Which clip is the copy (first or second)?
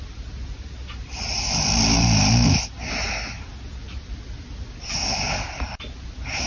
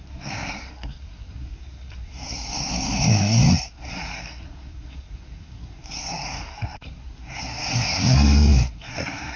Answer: second